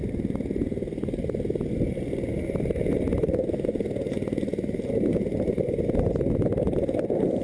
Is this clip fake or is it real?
fake